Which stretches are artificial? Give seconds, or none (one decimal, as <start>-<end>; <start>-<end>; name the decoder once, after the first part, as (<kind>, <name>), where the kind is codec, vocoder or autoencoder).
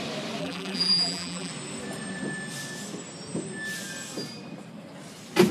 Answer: 0.4-1.5 (vocoder, BigVGAN v2)